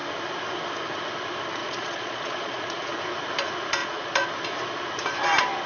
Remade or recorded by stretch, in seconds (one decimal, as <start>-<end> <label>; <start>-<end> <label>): 0.0-1.6 recorded; 1.6-3.0 remade; 3.0-3.8 recorded; 3.8-4.3 remade; 4.3-5.7 recorded